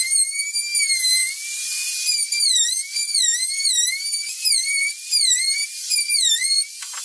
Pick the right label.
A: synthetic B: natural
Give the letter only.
A